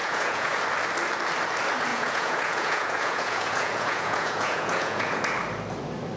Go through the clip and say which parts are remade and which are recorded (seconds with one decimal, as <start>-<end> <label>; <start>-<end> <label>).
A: 0.0-0.6 remade; 0.6-1.9 recorded; 1.9-5.2 remade; 5.2-6.2 recorded